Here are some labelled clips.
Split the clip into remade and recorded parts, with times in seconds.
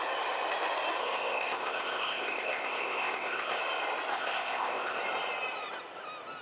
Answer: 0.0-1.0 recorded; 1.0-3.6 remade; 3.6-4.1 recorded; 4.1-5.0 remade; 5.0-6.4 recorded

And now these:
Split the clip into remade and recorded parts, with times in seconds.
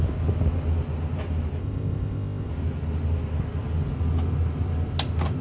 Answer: 0.0-1.6 recorded; 1.6-2.5 remade; 2.5-5.4 recorded